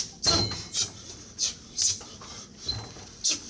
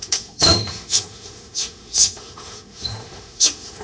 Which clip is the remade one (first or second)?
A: second